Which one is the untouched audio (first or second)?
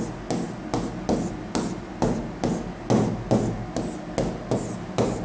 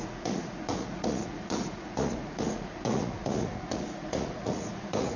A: first